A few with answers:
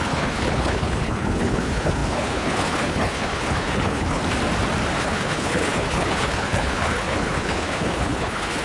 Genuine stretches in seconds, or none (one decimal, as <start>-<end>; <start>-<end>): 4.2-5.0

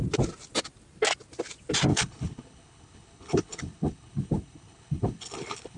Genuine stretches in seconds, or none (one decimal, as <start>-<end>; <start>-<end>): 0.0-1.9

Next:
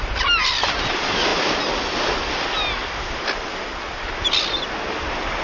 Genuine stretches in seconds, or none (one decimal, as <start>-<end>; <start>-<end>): 0.0-5.4

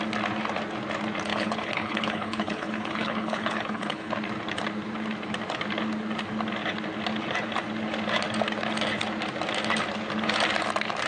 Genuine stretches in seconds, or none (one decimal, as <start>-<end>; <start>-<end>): 0.0-1.3; 4.1-11.1

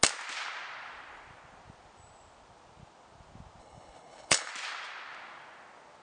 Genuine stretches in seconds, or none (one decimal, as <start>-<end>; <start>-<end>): 0.0-3.6; 4.5-6.0

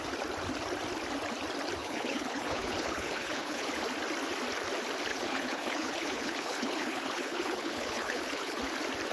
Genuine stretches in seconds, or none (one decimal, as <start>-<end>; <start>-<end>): 0.0-1.8; 3.8-5.1; 8.6-9.1